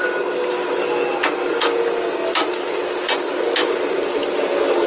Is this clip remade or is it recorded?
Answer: recorded